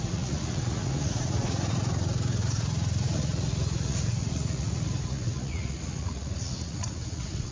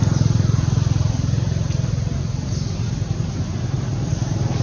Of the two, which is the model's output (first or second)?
first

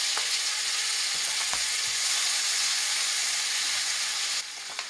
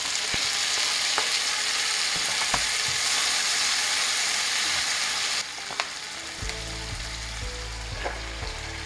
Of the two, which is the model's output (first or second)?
first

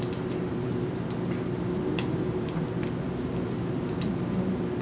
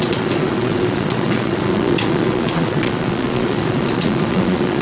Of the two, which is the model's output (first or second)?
second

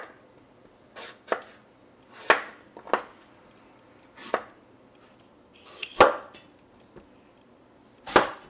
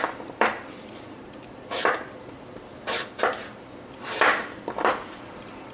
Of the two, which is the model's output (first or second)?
second